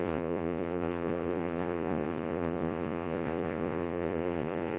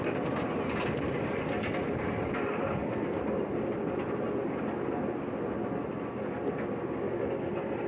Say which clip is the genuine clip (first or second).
second